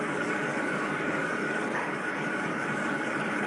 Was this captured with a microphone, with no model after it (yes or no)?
no